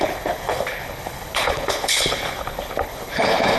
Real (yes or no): no